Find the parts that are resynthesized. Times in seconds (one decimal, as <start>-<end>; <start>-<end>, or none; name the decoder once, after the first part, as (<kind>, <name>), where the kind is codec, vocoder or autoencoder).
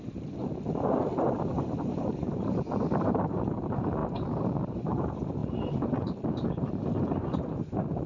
0.0-0.4 (vocoder, BigVGAN v2); 1.5-8.1